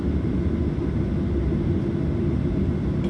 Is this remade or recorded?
recorded